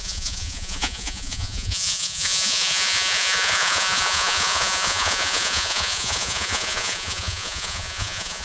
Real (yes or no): no